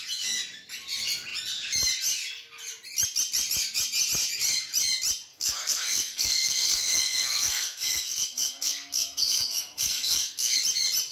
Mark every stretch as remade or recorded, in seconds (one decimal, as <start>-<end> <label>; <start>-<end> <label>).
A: 0.0-5.3 recorded; 5.3-10.6 remade; 10.6-11.1 recorded

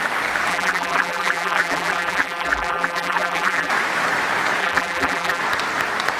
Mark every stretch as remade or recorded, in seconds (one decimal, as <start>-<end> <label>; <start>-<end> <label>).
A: 0.0-0.5 recorded; 0.5-3.7 remade; 3.7-4.6 recorded; 4.6-5.4 remade; 5.4-6.2 recorded

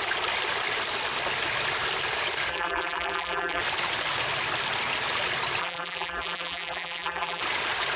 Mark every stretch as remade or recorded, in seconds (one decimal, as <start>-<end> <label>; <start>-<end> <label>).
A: 0.0-2.5 recorded; 2.5-3.6 remade; 3.6-5.6 recorded; 5.6-7.4 remade; 7.4-8.0 recorded

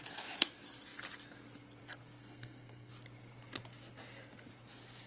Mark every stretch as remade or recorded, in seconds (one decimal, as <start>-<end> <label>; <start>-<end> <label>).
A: 0.0-2.2 recorded; 2.2-2.9 remade; 2.9-5.1 recorded

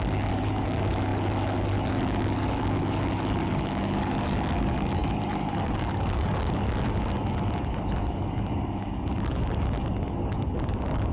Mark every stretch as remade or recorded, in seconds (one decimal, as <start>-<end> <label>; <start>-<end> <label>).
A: 0.0-11.1 remade